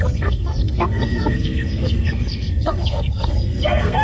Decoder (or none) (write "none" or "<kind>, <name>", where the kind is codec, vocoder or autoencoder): codec, SNAC